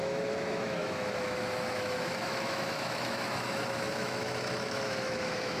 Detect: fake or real fake